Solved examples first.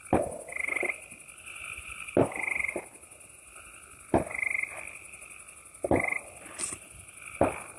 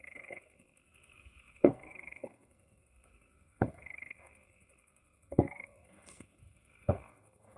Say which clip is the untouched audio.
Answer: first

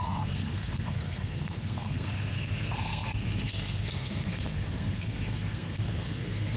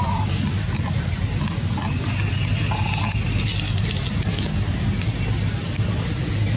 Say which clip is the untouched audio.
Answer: second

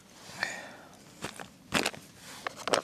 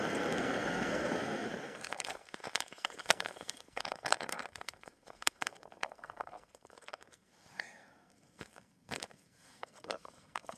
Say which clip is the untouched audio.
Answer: first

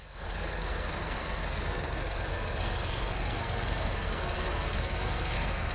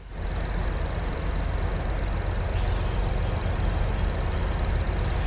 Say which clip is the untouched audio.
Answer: second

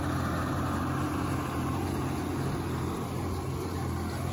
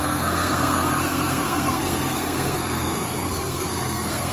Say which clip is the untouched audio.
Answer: first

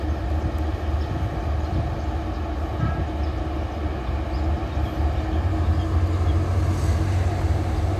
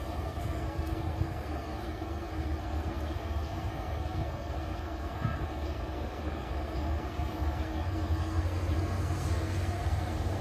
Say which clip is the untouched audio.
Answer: first